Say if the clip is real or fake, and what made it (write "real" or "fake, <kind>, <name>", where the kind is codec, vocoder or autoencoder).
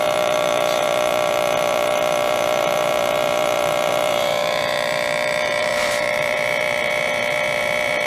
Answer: fake, vocoder, BigVGAN v2